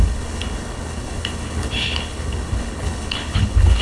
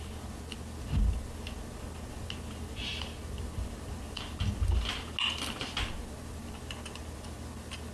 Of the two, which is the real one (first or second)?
second